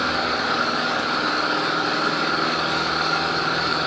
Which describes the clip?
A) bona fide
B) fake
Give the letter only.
B